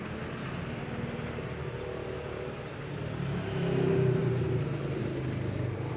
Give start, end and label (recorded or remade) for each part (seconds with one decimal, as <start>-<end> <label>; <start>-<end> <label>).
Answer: 0.0-6.0 recorded